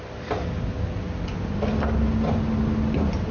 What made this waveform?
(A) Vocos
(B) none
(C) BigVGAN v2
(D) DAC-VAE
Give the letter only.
B